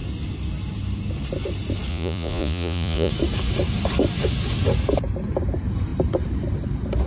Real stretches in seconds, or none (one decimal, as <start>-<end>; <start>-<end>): 0.0-1.9; 3.1-7.1